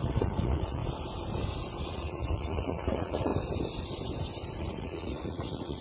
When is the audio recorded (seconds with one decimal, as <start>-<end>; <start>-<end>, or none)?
0.8-1.8; 3.3-4.6